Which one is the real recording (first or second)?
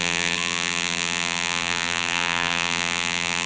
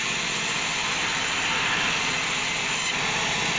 second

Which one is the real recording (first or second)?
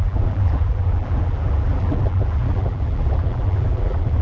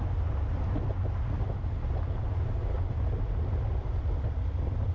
second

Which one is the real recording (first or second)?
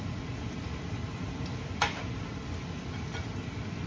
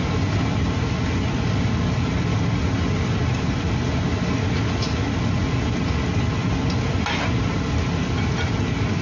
second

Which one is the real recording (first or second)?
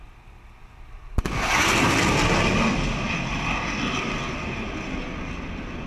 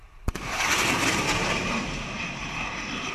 first